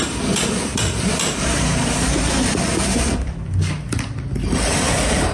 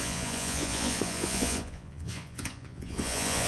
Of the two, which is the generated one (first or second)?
second